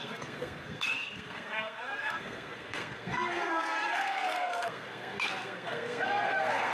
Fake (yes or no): yes